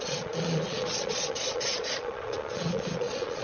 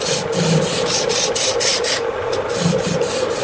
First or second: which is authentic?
second